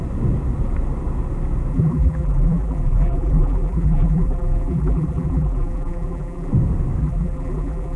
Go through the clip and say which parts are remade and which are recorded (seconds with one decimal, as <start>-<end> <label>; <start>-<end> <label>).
0.0-1.7 recorded; 1.7-6.5 remade; 6.5-7.0 recorded; 7.0-8.0 remade